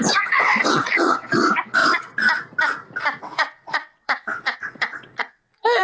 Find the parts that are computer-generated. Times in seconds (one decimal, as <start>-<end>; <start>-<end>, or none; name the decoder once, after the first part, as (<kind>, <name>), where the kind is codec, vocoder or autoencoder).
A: 0.0-1.8 (vocoder, WaveNeXt); 3.2-5.8